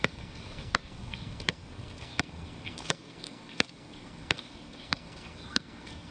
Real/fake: fake